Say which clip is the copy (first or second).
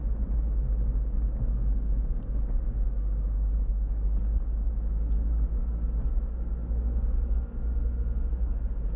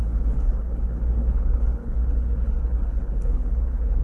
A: second